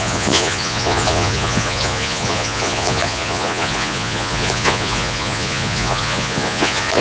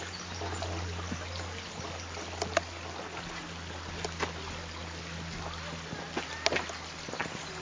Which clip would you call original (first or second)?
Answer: second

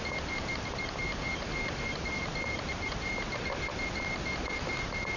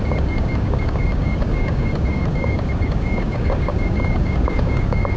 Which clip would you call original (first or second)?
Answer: first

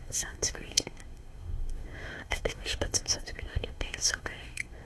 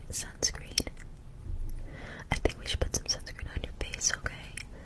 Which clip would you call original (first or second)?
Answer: second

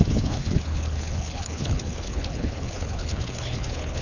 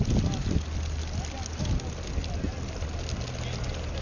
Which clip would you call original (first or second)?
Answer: second